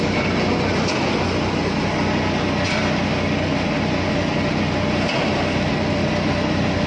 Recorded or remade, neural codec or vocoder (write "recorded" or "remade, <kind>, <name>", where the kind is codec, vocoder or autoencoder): recorded